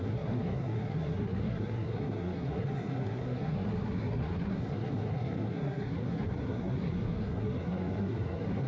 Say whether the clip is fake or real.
fake